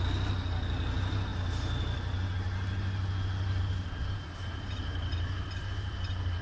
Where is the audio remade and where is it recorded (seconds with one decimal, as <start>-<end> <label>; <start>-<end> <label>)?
0.0-6.4 recorded